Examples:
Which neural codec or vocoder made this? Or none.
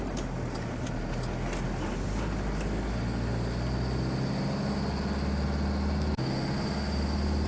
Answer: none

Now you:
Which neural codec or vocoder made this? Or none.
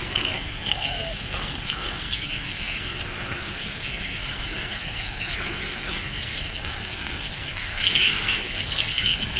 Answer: codec, SNAC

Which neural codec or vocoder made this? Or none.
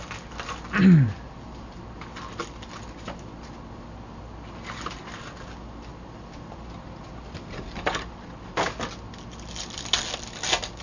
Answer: none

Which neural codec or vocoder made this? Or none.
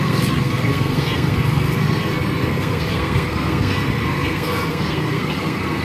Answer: codec, SNAC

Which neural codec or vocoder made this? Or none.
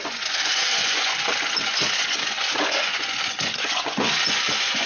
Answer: vocoder, Vocos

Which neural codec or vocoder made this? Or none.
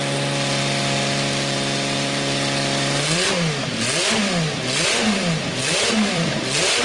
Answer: vocoder, BigVGAN v2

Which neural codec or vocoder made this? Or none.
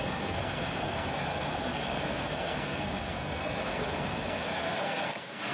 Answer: codec, SNAC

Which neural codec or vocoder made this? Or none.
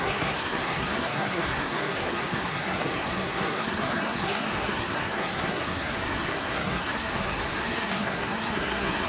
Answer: codec, SNAC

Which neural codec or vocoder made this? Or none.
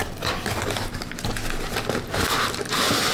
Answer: none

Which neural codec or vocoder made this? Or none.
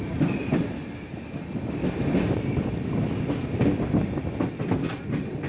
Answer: none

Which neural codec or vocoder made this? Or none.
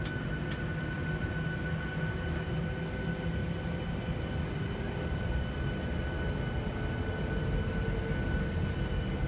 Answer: none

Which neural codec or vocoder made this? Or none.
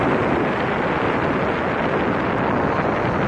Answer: none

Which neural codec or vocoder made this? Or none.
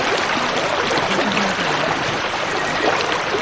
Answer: none